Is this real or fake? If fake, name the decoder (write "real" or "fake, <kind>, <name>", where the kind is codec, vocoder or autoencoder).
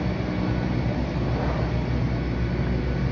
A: real